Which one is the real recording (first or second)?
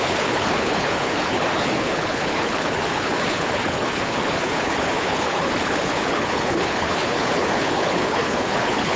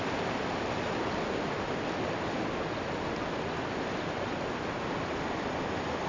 second